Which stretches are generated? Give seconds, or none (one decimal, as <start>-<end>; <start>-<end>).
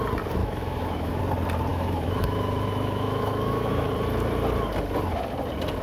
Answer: 0.4-1.2; 1.7-3.9